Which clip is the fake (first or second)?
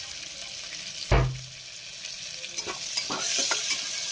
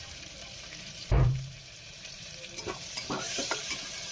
second